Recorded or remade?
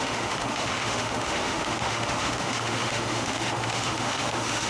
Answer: remade